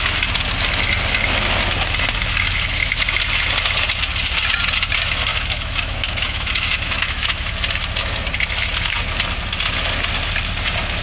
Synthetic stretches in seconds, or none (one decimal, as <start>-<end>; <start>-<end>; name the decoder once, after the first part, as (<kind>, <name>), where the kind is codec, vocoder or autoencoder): 5.3-7.5 (autoencoder, DAC-VAE)